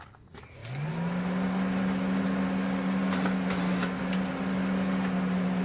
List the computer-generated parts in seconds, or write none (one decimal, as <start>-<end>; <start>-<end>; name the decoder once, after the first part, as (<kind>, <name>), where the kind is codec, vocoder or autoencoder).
none